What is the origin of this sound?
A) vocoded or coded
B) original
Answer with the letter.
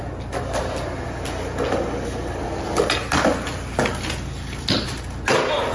B